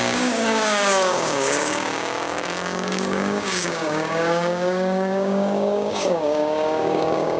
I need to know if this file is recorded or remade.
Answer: remade